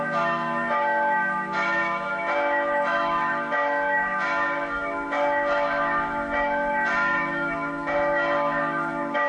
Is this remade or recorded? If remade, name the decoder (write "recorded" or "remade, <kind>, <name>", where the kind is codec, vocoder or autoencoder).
remade, autoencoder, DAC-VAE